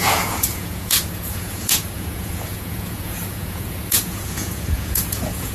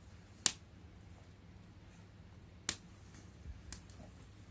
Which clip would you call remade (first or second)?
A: first